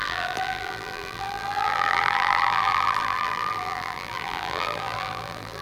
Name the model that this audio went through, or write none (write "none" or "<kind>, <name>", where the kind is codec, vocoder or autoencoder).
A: vocoder, BigVGAN v2